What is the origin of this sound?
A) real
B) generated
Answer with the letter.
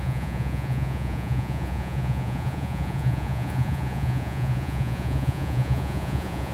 B